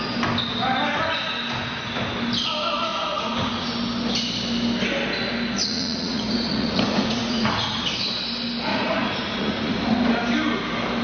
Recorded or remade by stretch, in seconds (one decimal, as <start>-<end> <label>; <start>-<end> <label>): 0.0-2.9 recorded; 2.9-3.7 remade; 3.7-5.6 recorded; 5.6-7.8 remade; 7.8-8.7 recorded; 8.7-10.1 remade; 10.1-11.0 recorded

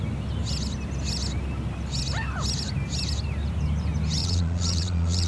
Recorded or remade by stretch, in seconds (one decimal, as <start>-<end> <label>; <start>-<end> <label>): 0.0-4.2 recorded; 4.2-5.3 remade

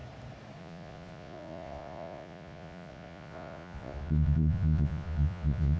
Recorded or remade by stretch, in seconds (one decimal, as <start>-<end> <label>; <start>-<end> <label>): 0.0-0.6 recorded; 0.6-5.8 remade